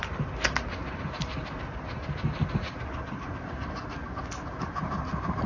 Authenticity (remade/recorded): recorded